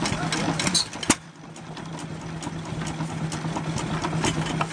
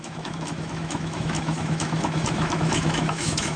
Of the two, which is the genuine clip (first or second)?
first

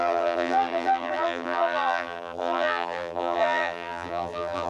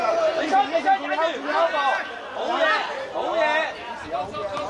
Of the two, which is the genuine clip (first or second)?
second